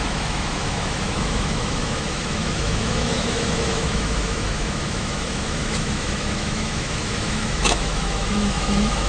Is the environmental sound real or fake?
fake